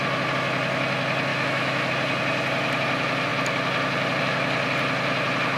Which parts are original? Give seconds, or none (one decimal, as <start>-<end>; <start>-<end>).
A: 0.0-1.3; 1.9-5.6